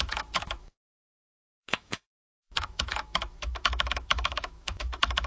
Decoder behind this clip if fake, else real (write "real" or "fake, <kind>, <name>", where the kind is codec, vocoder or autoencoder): fake, autoencoder, DAC-VAE